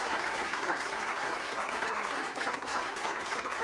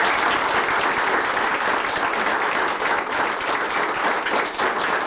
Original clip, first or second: second